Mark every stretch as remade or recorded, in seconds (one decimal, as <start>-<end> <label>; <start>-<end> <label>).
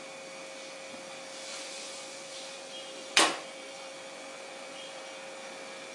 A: 0.0-1.5 recorded; 1.5-5.0 remade; 5.0-5.9 recorded